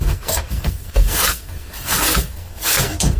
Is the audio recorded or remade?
remade